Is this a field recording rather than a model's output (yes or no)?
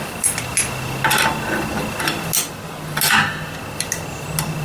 yes